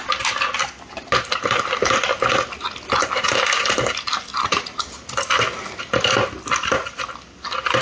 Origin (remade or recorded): recorded